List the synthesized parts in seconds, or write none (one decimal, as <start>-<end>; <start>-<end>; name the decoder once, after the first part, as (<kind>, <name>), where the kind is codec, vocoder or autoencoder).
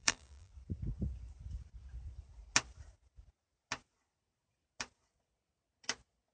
0.0-0.5 (vocoder, BigVGAN v2)